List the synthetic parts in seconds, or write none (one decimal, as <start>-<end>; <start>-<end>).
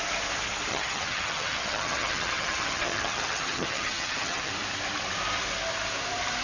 0.7-4.5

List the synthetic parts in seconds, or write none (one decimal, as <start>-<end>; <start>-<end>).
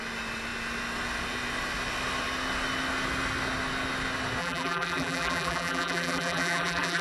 4.4-7.0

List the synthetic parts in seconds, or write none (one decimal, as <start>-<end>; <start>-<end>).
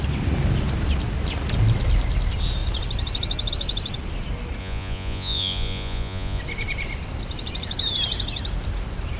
4.6-6.4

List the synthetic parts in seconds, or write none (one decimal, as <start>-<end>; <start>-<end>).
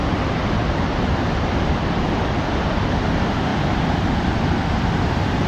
none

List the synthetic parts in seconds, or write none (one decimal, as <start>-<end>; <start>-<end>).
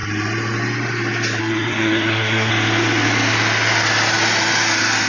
1.4-2.5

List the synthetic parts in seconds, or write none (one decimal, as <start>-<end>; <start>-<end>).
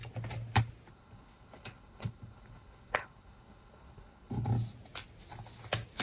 0.9-4.5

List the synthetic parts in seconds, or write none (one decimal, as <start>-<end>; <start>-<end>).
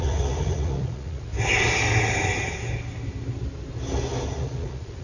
0.0-1.3; 4.3-5.0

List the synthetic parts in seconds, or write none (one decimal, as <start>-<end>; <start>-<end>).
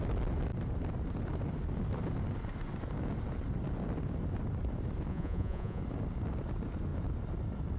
5.1-5.8